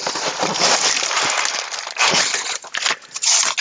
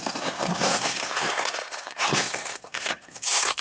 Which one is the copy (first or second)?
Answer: second